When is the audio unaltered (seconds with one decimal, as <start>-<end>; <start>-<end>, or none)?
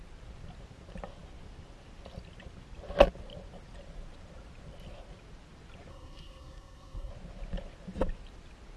0.0-5.9; 7.1-8.8